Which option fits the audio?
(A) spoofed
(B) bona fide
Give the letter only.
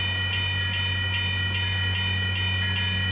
B